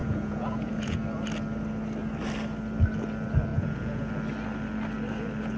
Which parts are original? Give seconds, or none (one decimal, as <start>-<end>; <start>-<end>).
1.0-3.5; 4.1-5.6